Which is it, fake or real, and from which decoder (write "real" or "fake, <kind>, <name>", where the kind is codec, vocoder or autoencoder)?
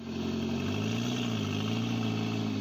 real